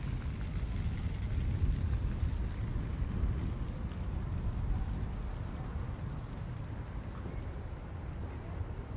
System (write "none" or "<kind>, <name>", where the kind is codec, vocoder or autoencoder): none